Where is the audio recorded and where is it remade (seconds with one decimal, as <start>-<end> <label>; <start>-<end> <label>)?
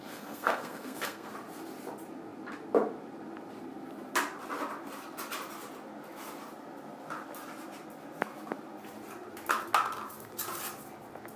0.0-1.3 remade; 1.3-11.4 recorded